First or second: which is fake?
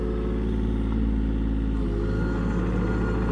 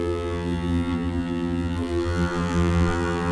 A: second